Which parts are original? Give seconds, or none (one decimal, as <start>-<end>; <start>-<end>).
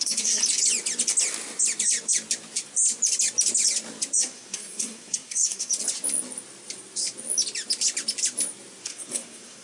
0.4-4.2; 5.7-8.8